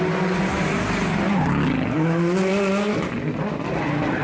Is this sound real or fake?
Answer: real